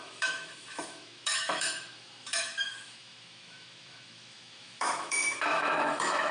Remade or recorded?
remade